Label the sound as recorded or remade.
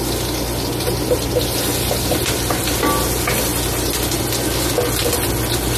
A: recorded